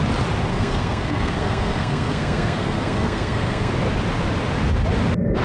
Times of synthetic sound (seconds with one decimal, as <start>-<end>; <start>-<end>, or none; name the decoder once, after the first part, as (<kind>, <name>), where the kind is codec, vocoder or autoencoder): 0.5-3.7 (codec, SNAC)